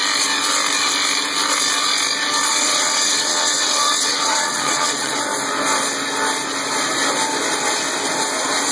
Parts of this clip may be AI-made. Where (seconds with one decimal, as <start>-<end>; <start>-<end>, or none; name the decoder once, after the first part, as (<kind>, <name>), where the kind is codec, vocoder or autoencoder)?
2.5-5.2 (vocoder, WaveNeXt)

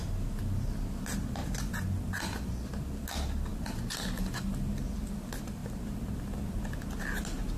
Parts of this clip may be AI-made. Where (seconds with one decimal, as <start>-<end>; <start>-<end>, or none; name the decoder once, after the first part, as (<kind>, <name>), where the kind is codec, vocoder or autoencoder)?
none

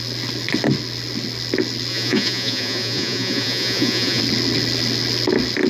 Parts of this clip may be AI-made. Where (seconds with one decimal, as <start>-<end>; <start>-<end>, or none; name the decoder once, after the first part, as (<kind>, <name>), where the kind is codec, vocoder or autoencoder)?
1.9-4.2 (vocoder, Vocos)

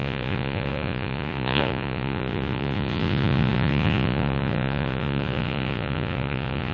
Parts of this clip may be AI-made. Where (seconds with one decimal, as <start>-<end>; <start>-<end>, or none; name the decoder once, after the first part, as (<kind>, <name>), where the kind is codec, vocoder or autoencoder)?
0.0-6.7 (vocoder, Vocos)

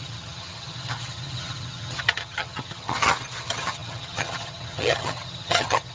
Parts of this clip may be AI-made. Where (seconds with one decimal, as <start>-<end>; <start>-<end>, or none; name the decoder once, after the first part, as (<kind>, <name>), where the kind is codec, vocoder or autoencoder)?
0.0-5.9 (vocoder, HiFi-GAN)

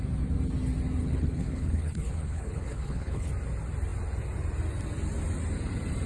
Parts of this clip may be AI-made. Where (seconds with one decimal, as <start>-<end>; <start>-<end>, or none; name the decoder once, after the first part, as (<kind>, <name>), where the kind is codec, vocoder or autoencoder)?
1.0-3.3 (codec, HILCodec)